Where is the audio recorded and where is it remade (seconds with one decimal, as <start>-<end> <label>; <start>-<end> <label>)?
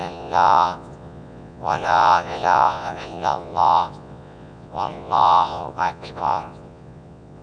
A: 0.0-7.4 remade